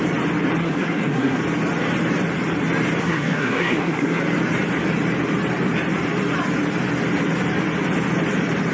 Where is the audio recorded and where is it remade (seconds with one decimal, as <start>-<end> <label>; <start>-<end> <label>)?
0.0-0.6 recorded; 0.6-1.4 remade; 1.4-3.0 recorded; 3.0-4.2 remade; 4.2-8.7 recorded